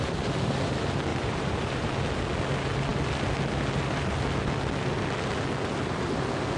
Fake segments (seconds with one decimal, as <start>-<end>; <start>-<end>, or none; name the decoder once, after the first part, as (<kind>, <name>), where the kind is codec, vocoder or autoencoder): 1.1-1.9 (vocoder, BigVGAN v2)